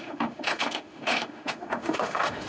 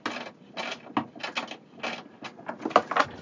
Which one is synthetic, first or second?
first